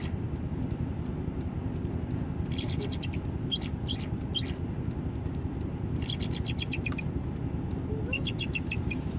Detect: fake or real real